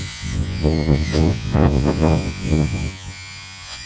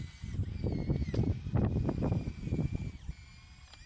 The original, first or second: second